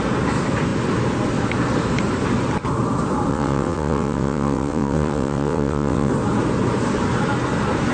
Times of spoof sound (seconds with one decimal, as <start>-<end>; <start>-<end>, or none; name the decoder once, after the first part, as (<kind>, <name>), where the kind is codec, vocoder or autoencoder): 3.3-6.1 (vocoder, WaveNeXt)